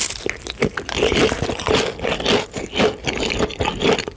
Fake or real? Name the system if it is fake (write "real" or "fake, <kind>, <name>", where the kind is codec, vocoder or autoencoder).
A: real